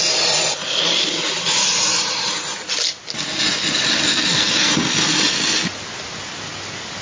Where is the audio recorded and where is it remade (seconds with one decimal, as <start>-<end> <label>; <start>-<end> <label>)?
0.0-4.1 recorded; 4.1-4.7 remade; 4.7-7.0 recorded